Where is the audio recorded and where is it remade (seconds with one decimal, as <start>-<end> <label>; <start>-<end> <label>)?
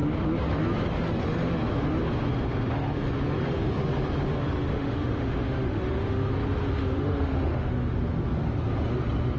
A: 0.0-4.7 recorded; 4.7-6.3 remade; 6.3-6.8 recorded; 6.8-8.0 remade; 8.0-9.4 recorded